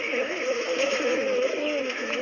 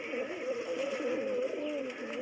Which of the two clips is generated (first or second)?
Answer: first